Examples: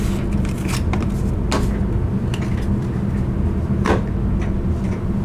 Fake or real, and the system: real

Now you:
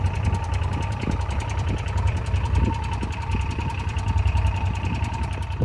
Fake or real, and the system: fake, vocoder, BigVGAN v2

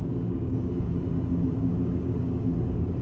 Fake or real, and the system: fake, codec, DAC